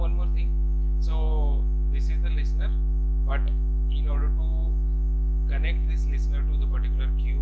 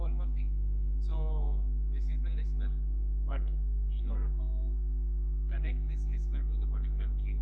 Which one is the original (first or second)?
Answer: first